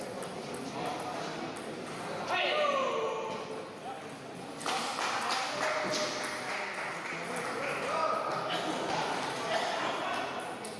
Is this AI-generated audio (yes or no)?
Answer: no